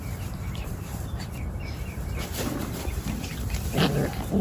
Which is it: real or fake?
fake